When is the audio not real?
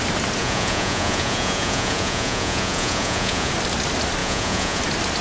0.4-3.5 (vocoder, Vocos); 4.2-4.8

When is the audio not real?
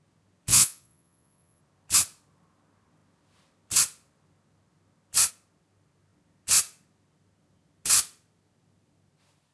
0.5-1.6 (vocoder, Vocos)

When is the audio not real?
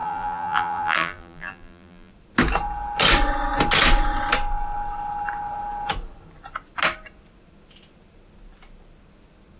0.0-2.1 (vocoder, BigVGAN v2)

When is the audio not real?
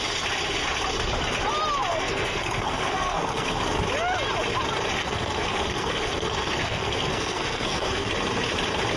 1.9-3.6 (codec, SNAC); 5.0-8.1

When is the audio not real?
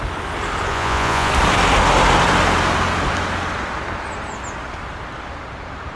0.7-1.3 (vocoder, Vocos)